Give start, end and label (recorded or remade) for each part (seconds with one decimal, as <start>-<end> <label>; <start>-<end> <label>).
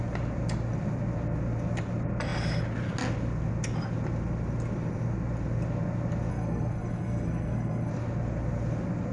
0.0-6.3 recorded; 6.3-7.9 remade; 7.9-9.1 recorded